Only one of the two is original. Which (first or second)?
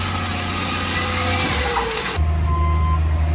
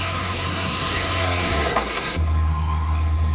first